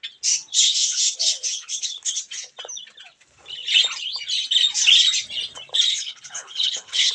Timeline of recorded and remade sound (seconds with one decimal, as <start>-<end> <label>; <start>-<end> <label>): 0.0-0.5 recorded; 0.5-2.2 remade; 2.2-5.9 recorded; 5.9-7.1 remade